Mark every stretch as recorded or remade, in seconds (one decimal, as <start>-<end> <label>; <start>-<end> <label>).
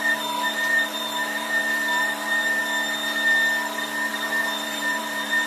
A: 0.0-2.6 remade; 2.6-4.1 recorded; 4.1-5.5 remade